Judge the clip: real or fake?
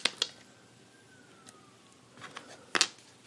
real